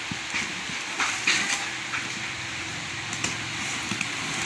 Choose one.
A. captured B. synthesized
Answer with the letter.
A